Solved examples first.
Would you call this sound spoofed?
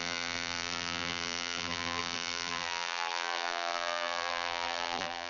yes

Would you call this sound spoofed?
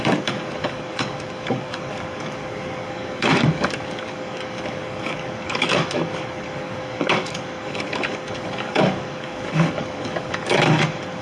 yes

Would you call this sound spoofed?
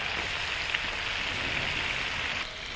no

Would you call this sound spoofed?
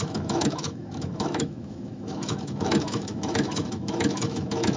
yes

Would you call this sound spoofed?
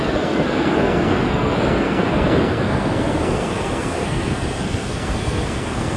yes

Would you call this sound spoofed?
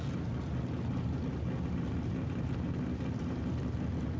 no